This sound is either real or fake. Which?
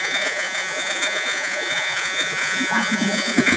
fake